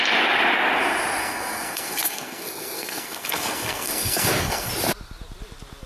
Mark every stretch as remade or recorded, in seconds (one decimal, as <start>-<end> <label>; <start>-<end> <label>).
0.0-1.2 recorded; 1.2-4.7 remade; 4.7-5.9 recorded